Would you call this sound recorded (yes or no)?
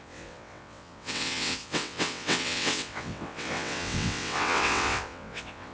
no